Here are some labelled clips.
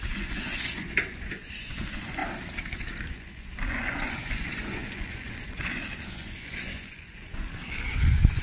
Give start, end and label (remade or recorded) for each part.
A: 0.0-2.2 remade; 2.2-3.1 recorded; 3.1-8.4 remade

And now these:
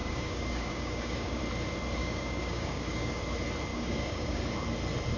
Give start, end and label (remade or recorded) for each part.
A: 0.0-1.4 remade; 1.4-2.0 recorded; 2.0-3.2 remade; 3.2-3.7 recorded; 3.7-4.4 remade; 4.4-5.2 recorded